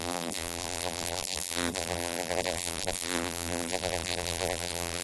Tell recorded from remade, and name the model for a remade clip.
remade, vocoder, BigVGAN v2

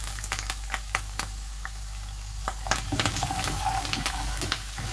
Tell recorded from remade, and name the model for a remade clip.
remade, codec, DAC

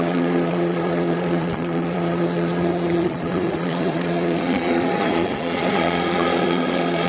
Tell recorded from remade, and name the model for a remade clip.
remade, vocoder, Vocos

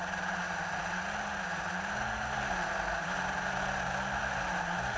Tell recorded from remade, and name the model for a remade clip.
recorded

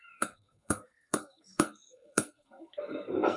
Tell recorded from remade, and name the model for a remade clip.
remade, codec, SNAC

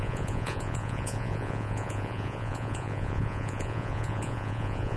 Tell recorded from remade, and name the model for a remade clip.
remade, vocoder, Vocos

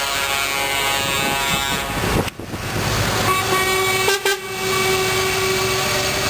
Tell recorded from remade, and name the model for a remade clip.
recorded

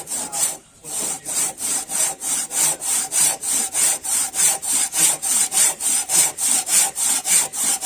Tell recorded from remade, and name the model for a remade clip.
remade, vocoder, BigVGAN v2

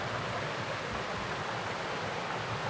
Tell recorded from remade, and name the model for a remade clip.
recorded